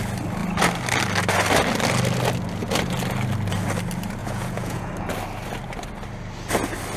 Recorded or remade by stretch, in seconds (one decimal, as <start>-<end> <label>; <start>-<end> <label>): 0.0-4.2 recorded; 4.2-4.9 remade; 4.9-7.0 recorded